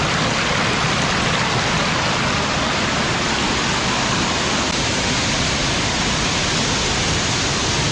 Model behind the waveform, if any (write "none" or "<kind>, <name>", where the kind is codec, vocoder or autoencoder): none